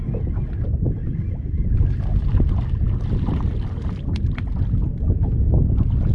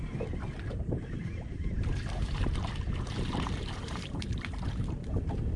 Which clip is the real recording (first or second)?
first